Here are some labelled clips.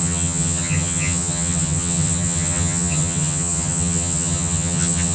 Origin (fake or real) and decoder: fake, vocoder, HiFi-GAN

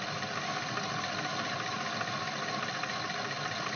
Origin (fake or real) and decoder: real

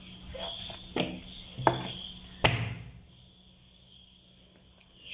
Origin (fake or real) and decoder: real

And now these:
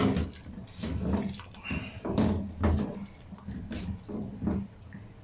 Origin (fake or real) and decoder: real